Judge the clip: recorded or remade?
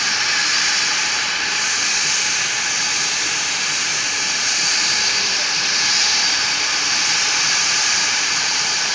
remade